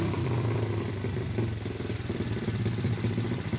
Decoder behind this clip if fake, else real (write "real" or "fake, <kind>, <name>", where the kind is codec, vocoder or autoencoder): fake, vocoder, BigVGAN v2